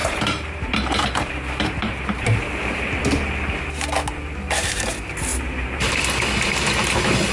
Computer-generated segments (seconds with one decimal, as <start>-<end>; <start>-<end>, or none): 0.0-3.0; 5.3-6.0